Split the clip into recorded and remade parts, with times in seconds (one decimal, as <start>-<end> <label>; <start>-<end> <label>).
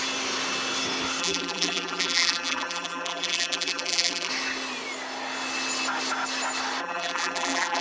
0.0-1.2 recorded; 1.2-4.3 remade; 4.3-6.8 recorded; 6.8-7.8 remade